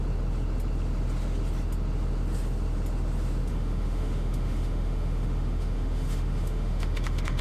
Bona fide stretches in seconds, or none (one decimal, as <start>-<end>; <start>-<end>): 0.0-3.5